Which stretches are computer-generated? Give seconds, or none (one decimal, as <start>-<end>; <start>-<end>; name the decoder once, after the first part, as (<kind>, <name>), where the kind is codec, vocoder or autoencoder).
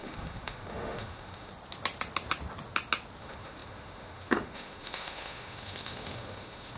0.0-1.5 (autoencoder, DAC-VAE); 3.2-6.8